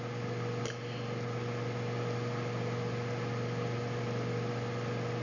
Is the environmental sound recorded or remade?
recorded